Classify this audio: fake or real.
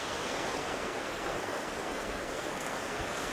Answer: fake